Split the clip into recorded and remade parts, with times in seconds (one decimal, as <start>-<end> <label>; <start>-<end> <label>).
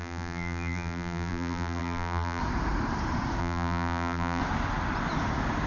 0.0-2.4 remade; 2.4-3.4 recorded; 3.4-4.4 remade; 4.4-5.7 recorded